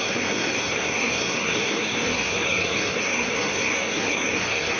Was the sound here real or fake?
fake